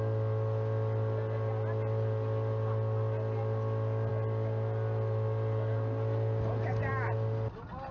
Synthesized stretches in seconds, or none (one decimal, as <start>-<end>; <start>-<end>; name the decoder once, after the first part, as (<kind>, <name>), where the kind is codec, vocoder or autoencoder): none